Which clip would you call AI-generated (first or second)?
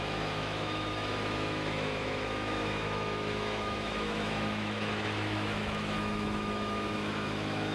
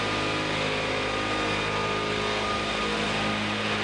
first